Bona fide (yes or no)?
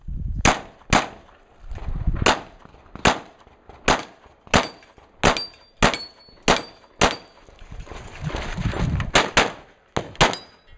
yes